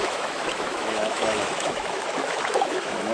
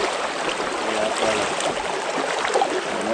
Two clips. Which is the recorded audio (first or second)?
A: second